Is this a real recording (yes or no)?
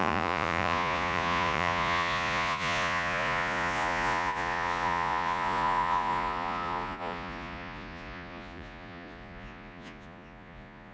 no